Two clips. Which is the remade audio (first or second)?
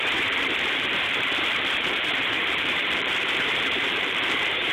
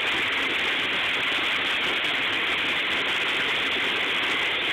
first